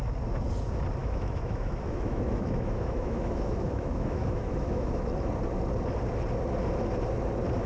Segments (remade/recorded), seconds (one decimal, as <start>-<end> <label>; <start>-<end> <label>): 0.0-1.0 recorded; 1.0-5.0 remade; 5.0-7.7 recorded